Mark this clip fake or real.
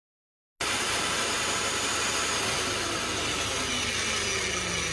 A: real